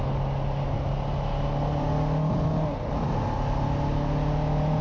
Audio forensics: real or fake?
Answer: real